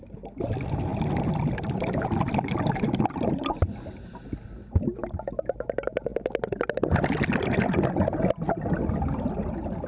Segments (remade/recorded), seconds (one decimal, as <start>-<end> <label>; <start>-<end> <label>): 0.0-9.9 recorded